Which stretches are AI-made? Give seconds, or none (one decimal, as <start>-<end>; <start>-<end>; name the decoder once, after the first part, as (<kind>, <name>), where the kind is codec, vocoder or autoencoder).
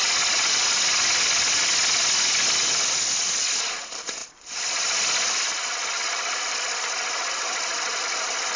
none